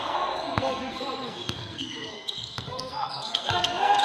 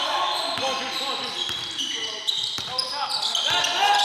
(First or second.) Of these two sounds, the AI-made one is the first